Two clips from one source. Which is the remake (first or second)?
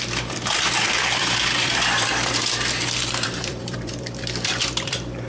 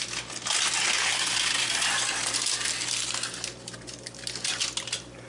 first